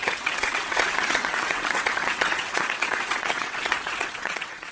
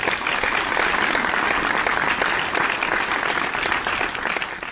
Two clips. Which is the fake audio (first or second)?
first